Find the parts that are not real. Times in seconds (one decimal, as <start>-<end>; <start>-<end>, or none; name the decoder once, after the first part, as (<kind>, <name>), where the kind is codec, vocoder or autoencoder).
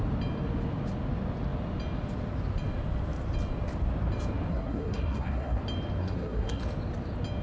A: 4.5-5.6 (codec, SNAC); 6.0-6.6